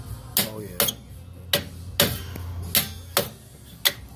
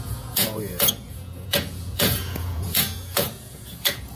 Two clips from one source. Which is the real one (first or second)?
first